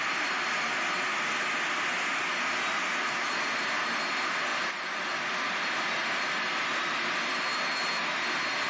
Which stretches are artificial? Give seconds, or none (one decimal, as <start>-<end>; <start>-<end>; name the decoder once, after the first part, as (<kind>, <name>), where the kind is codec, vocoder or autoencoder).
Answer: none